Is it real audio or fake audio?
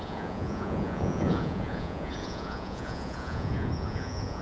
fake